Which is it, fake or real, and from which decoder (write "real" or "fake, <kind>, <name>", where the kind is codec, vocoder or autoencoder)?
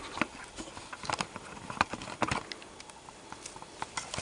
real